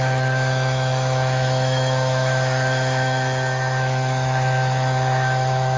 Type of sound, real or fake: fake